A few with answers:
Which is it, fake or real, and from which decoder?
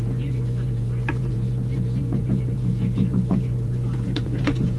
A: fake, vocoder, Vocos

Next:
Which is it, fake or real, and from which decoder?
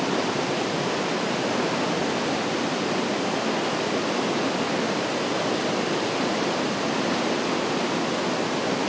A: real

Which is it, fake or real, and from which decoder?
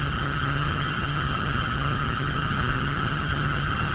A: fake, vocoder, HiFi-GAN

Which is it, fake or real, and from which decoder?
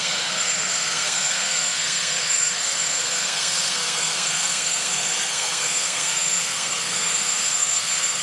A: fake, codec, SNAC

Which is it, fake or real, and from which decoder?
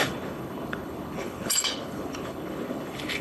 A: fake, codec, HILCodec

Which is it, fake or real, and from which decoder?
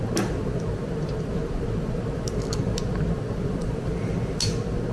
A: real